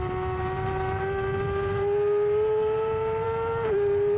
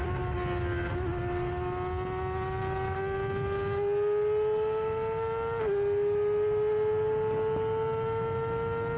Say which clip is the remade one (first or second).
first